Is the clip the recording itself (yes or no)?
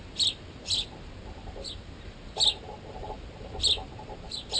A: no